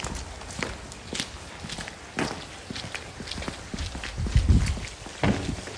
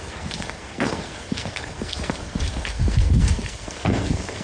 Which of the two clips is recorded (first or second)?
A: first